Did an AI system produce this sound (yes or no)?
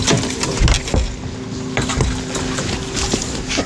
no